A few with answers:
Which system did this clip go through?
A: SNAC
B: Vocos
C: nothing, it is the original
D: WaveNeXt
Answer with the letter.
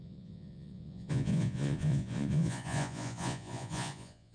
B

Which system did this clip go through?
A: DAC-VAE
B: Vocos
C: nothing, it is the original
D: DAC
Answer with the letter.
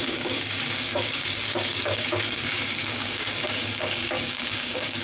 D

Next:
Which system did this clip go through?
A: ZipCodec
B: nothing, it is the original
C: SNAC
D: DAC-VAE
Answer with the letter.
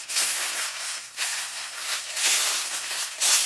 C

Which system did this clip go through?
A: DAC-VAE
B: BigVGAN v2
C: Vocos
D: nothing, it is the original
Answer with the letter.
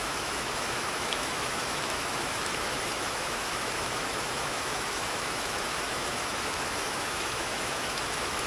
A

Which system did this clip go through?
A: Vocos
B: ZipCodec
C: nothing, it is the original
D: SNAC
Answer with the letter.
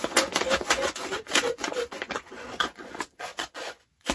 A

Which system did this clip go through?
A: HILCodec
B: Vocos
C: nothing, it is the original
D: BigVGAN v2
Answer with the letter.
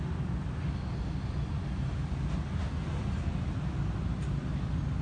C